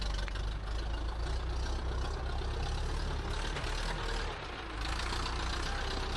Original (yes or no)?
yes